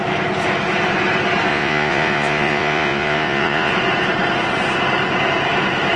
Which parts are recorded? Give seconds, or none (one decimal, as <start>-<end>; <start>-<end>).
0.0-1.5; 3.7-6.0